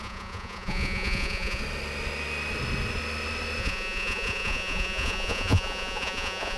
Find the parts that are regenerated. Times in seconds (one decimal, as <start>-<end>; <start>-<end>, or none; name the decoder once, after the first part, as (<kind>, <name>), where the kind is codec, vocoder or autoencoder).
0.0-1.6 (vocoder, Vocos); 3.6-6.6